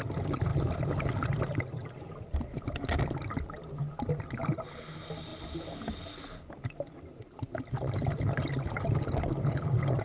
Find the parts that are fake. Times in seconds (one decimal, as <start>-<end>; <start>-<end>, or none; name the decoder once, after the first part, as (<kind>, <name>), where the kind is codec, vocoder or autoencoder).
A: none